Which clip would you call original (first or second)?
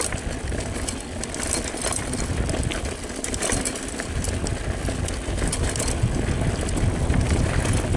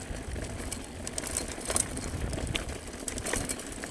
first